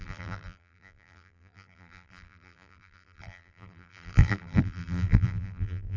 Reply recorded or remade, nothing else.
remade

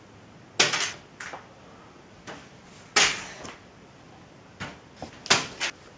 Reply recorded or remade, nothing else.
recorded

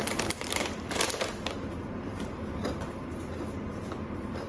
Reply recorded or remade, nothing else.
remade